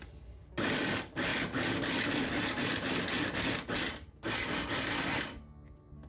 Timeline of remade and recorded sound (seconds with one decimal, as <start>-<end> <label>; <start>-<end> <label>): 0.0-6.1 recorded

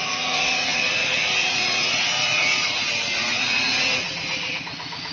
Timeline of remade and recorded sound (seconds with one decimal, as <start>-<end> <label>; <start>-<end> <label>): 0.0-5.1 remade

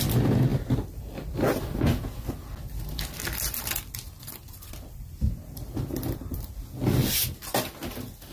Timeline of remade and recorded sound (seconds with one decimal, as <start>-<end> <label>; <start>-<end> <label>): 0.0-0.5 recorded; 0.5-1.8 remade; 1.8-3.2 recorded; 3.2-6.5 remade; 6.5-8.3 recorded

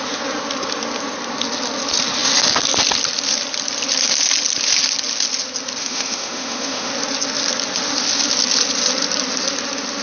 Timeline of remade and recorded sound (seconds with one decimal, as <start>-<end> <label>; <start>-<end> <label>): 0.0-5.8 recorded; 5.8-6.9 remade; 6.9-10.0 recorded